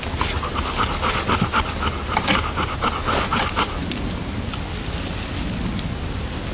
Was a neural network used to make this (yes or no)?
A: no